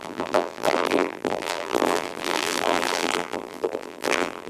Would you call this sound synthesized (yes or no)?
yes